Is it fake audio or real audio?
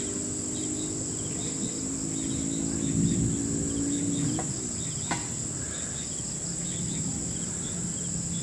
real